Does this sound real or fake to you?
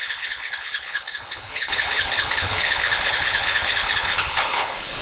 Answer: fake